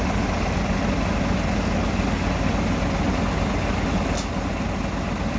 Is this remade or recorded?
recorded